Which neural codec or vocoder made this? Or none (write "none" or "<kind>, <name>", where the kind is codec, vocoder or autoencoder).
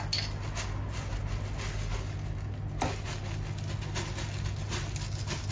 none